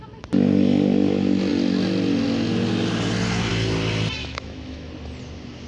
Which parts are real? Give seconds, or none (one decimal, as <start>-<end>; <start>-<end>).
0.0-4.2; 4.9-5.7